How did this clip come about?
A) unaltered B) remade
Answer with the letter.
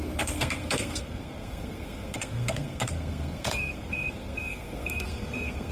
B